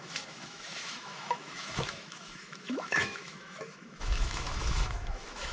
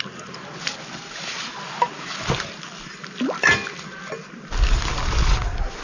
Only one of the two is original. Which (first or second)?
second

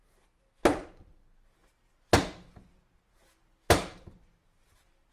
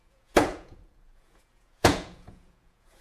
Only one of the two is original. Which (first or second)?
first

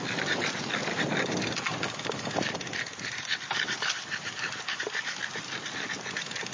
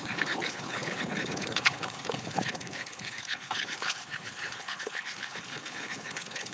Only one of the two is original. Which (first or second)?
first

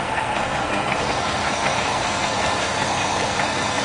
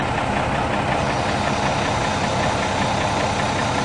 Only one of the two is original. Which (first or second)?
second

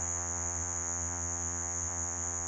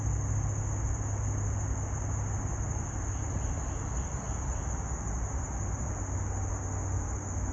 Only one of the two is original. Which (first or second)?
second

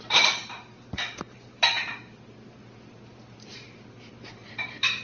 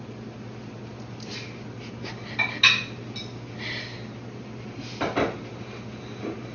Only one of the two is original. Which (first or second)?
second